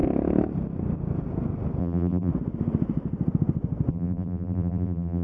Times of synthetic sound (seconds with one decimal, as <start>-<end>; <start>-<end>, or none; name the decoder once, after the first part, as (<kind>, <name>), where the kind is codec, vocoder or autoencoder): 1.8-2.3 (vocoder, BigVGAN v2); 3.9-5.2

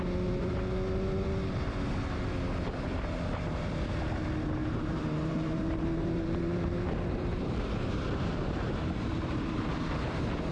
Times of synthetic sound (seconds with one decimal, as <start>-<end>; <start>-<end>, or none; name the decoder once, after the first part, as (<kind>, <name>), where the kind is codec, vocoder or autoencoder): 4.6-9.6 (vocoder, BigVGAN v2)